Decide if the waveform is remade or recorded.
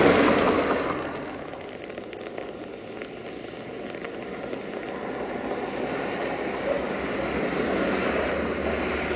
recorded